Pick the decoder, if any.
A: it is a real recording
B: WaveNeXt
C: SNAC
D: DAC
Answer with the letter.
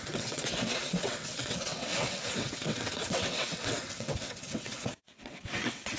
B